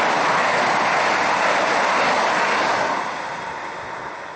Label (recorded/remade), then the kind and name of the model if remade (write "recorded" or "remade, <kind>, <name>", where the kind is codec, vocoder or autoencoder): recorded